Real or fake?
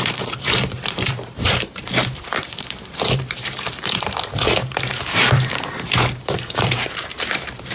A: fake